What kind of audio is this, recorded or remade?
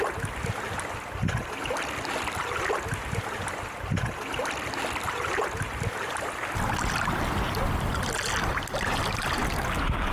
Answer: recorded